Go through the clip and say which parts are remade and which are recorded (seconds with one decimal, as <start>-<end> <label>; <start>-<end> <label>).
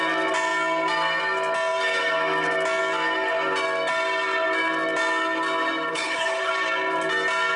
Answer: 0.0-5.9 recorded; 5.9-6.5 remade; 6.5-7.6 recorded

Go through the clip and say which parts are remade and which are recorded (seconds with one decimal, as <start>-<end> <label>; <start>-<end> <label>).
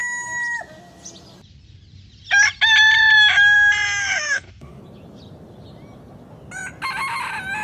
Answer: 0.0-4.0 recorded; 4.0-4.8 remade; 4.8-7.6 recorded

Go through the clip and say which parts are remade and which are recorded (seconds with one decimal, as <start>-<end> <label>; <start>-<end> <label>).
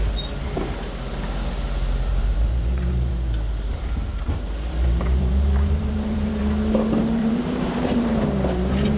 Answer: 0.0-2.1 recorded; 2.1-3.1 remade; 3.1-4.1 recorded; 4.1-6.4 remade; 6.4-7.2 recorded; 7.2-8.1 remade; 8.1-9.0 recorded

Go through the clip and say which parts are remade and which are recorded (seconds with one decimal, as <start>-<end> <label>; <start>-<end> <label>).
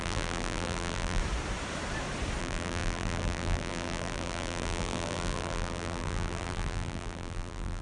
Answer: 0.0-1.2 remade; 1.2-2.4 recorded; 2.4-7.8 remade